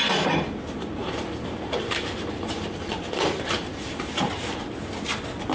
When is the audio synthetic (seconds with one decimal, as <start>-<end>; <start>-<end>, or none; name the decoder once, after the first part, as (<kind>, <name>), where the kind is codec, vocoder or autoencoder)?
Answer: 1.0-4.3 (vocoder, BigVGAN v2)